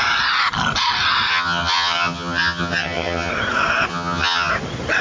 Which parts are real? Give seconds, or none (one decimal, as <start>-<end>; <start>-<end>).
0.0-1.3; 3.3-3.9; 4.5-5.0